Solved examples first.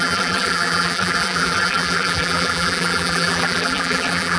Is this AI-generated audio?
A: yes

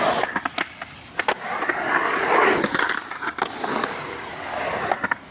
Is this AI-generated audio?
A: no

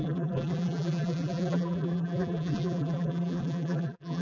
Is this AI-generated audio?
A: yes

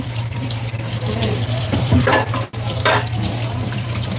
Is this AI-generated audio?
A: yes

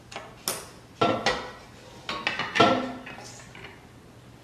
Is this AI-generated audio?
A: no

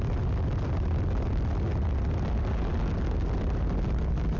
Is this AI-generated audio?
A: no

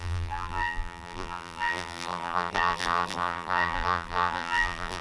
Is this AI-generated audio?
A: yes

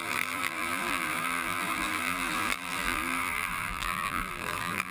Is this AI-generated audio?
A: yes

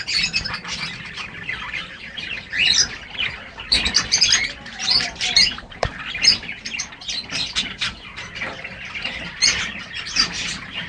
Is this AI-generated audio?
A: yes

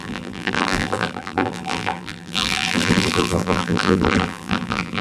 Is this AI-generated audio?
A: yes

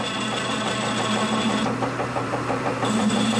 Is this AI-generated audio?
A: yes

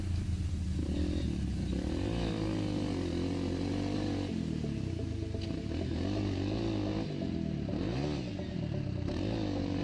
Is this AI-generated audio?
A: no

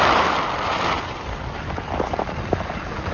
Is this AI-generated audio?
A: yes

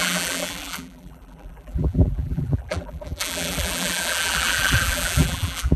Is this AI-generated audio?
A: yes